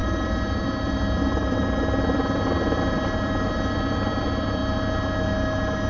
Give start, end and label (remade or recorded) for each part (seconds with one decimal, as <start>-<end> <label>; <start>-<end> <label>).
0.0-4.6 remade; 4.6-5.9 recorded